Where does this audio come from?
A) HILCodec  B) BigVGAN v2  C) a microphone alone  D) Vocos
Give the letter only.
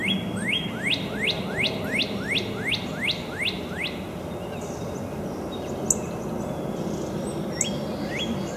C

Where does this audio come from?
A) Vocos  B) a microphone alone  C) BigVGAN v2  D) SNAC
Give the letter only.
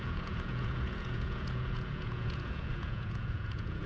A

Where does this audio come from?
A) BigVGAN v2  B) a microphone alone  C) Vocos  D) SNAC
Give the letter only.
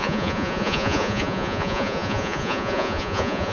C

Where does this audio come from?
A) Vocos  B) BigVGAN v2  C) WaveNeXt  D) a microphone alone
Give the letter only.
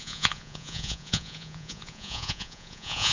A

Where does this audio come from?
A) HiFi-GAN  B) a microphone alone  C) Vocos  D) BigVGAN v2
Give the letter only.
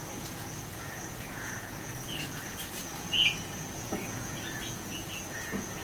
C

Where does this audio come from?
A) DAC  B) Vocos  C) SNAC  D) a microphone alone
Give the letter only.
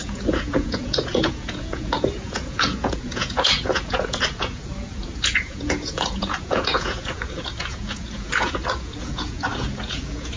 B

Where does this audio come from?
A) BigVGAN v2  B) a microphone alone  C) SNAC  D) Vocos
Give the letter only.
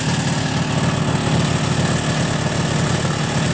B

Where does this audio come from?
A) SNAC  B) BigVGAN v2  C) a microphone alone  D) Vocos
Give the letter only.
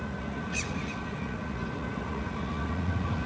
D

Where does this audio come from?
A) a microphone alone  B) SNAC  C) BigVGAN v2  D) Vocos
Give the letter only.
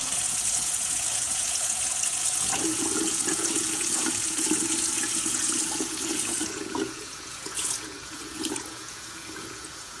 D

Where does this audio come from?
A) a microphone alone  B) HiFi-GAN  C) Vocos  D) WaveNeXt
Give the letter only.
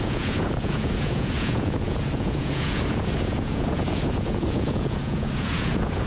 C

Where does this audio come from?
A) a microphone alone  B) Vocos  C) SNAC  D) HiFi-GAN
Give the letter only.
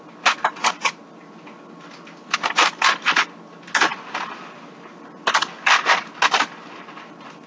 A